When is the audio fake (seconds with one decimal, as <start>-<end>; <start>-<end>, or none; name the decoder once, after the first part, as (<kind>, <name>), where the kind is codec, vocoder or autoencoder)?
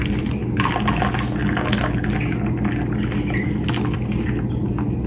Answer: none